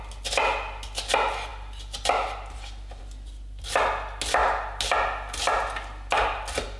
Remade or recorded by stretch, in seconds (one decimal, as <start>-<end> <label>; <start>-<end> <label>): 0.0-6.8 recorded